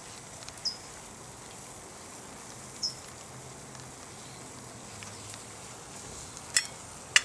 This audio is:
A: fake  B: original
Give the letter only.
B